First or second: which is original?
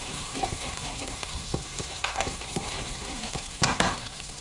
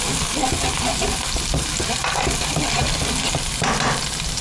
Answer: second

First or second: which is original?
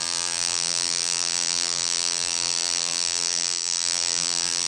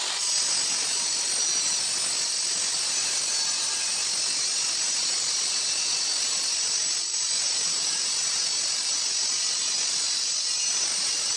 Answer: second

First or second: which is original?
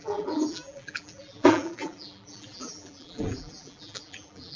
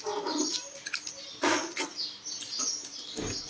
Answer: second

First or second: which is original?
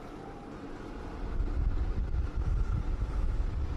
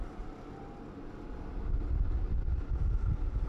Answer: second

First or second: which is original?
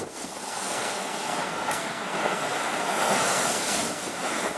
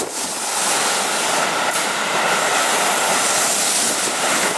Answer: second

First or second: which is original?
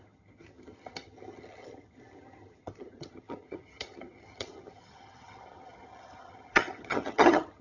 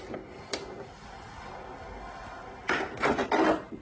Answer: second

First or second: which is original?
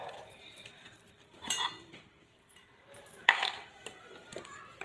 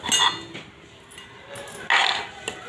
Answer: second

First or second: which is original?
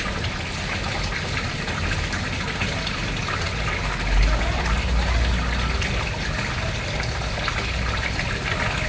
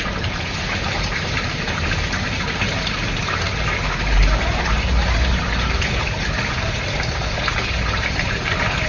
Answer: first